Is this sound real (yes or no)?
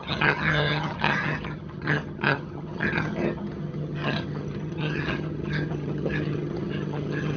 no